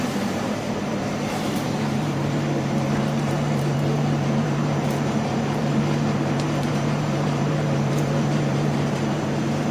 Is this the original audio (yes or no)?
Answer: no